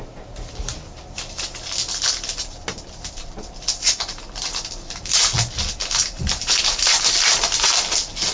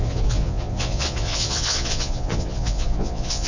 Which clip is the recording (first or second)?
first